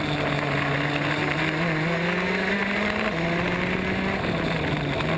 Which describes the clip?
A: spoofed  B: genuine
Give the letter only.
B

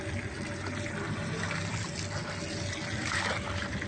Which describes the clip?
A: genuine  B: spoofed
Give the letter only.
A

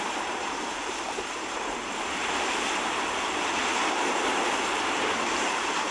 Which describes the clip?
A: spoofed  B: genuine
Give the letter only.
A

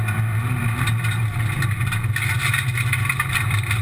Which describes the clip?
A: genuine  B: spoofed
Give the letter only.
A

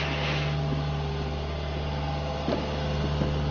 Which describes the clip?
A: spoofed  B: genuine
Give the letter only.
B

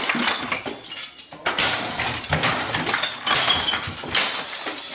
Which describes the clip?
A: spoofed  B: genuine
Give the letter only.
B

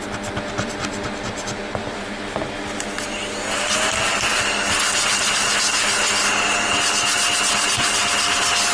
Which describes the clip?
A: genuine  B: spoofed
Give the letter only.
A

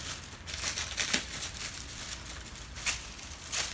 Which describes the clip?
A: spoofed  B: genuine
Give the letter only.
A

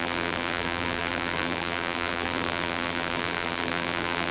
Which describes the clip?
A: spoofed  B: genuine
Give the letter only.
A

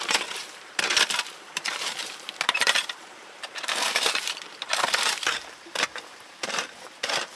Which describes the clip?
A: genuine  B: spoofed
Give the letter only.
B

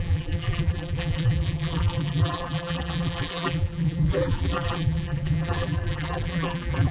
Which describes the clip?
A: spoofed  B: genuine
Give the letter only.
A